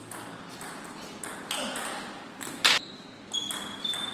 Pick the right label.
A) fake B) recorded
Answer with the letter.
B